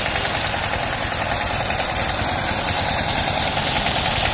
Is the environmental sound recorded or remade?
recorded